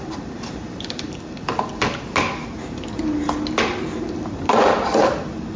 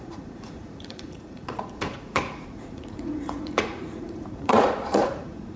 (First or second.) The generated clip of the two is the second